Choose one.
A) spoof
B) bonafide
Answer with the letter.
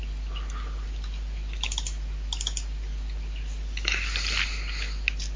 B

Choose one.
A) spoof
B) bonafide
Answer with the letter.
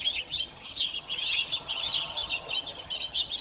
A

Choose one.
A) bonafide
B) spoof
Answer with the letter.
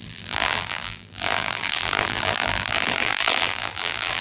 B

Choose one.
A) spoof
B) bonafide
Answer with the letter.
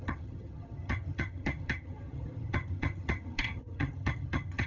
A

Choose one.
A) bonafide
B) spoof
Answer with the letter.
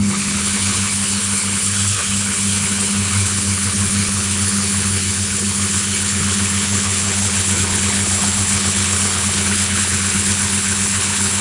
B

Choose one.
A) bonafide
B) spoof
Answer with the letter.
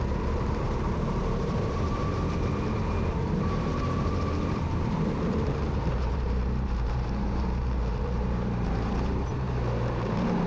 B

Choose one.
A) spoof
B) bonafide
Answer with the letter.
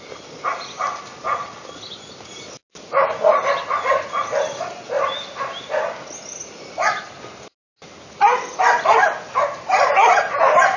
B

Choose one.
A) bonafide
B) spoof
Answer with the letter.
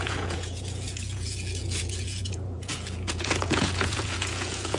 B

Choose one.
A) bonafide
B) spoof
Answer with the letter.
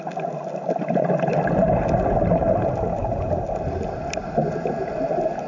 A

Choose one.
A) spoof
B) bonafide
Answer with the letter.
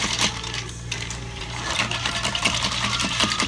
A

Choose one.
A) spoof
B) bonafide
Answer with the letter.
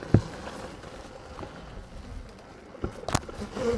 B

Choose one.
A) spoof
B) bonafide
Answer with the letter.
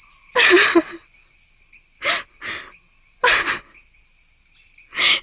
B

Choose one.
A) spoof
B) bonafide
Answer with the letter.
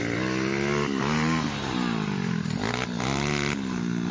B